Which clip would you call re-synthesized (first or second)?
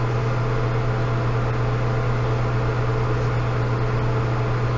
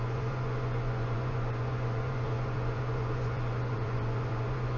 second